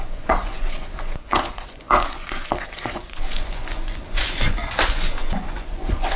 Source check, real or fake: fake